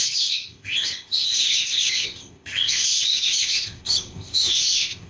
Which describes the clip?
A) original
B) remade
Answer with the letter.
B